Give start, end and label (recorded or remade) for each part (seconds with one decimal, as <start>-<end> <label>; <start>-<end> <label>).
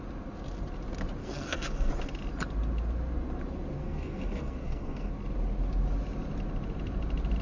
0.0-1.2 recorded; 1.2-1.9 remade; 1.9-3.8 recorded; 3.8-5.1 remade; 5.1-7.4 recorded